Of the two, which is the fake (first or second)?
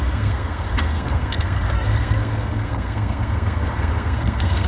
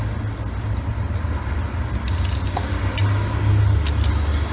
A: first